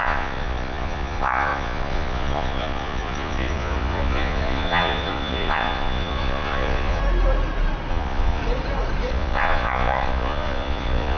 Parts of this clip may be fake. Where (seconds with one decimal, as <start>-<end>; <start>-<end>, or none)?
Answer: 0.0-7.0; 7.9-8.4; 9.1-11.2